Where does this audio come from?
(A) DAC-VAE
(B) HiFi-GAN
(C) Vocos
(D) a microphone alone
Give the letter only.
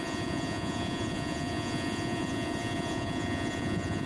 C